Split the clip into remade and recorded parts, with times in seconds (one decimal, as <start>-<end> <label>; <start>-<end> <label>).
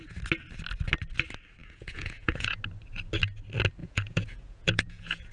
0.0-1.6 recorded; 1.6-2.6 remade; 2.6-3.8 recorded; 3.8-5.3 remade